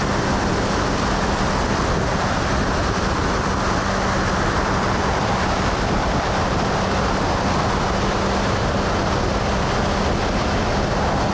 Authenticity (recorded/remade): recorded